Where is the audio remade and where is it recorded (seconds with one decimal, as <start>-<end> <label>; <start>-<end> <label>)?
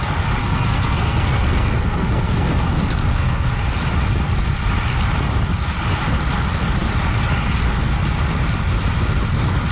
0.0-0.4 recorded; 0.4-3.5 remade; 3.5-9.7 recorded